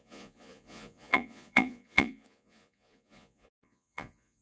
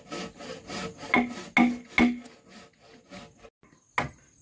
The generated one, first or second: first